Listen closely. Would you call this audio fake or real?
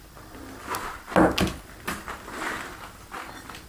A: real